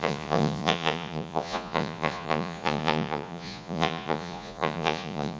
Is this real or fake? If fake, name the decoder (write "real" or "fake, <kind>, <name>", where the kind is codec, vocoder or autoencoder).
fake, vocoder, Vocos